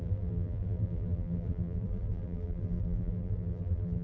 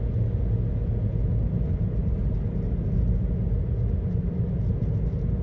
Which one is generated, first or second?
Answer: first